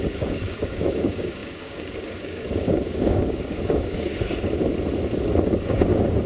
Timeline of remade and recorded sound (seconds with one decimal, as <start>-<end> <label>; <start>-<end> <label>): 0.0-4.1 remade; 4.1-5.7 recorded; 5.7-6.3 remade